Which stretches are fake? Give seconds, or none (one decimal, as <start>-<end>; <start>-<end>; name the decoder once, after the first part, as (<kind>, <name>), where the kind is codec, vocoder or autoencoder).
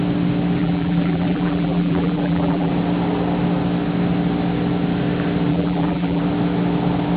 0.6-2.7 (vocoder, BigVGAN v2); 5.5-6.2